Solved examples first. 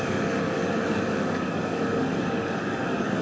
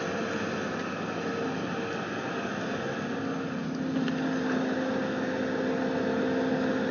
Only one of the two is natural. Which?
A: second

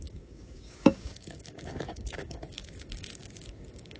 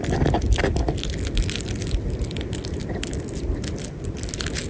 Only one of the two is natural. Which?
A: second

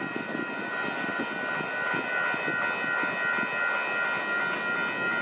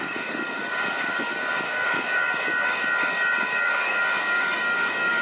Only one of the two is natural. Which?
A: first